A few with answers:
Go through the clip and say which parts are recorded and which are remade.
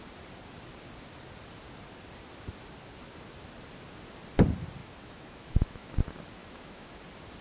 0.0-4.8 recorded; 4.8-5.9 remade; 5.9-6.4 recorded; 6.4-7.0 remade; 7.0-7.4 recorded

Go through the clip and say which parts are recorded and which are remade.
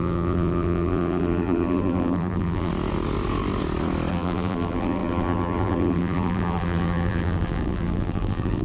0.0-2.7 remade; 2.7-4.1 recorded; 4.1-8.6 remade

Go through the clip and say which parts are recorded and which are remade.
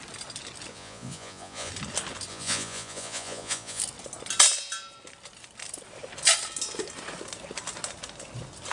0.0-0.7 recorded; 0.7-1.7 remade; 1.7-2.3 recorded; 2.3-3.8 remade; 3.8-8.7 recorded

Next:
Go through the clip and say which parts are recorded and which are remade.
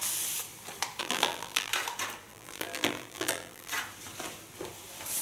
0.0-1.0 recorded; 1.0-1.7 remade; 1.7-2.3 recorded; 2.3-3.7 remade; 3.7-5.2 recorded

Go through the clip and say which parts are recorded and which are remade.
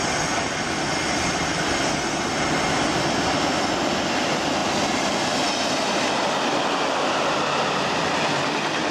0.0-8.9 recorded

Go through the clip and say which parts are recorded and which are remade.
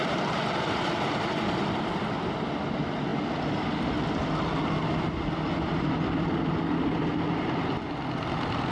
0.0-8.7 recorded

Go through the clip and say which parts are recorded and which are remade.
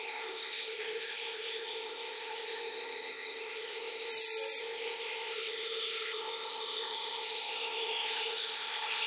0.0-4.1 remade; 4.1-4.6 recorded; 4.6-9.1 remade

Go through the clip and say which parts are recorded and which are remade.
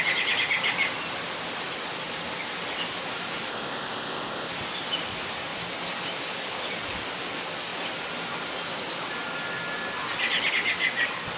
0.0-3.5 recorded; 3.5-4.5 remade; 4.5-11.4 recorded